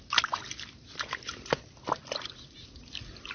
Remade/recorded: recorded